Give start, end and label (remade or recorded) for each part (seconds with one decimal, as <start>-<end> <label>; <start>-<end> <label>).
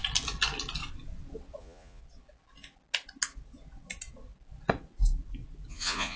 0.0-1.6 recorded; 1.6-2.0 remade; 2.0-5.7 recorded; 5.7-6.2 remade